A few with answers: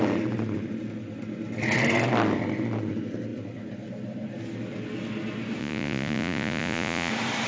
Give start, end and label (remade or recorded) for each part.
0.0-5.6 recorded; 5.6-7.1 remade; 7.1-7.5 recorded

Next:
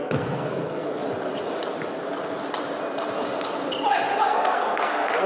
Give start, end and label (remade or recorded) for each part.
0.0-1.0 remade; 1.0-4.2 recorded; 4.2-5.3 remade

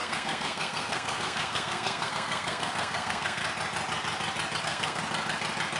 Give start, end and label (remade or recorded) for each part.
0.0-3.4 remade; 3.4-4.6 recorded; 4.6-5.0 remade; 5.0-5.8 recorded

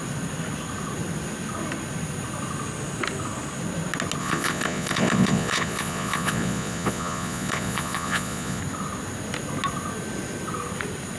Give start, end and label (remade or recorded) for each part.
0.0-4.2 recorded; 4.2-8.6 remade; 8.6-11.2 recorded

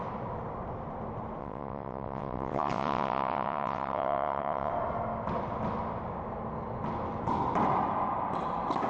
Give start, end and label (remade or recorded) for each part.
0.0-1.4 recorded; 1.4-4.7 remade; 4.7-8.9 recorded

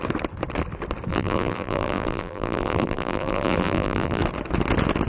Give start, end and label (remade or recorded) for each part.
0.0-1.1 recorded; 1.1-4.2 remade; 4.2-5.1 recorded

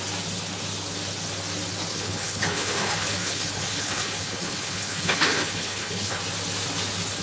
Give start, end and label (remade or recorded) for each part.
0.0-1.9 recorded; 1.9-6.2 remade; 6.2-7.2 recorded

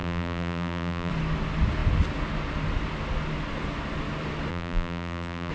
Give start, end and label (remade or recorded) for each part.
0.0-1.1 remade; 1.1-4.5 recorded; 4.5-5.5 remade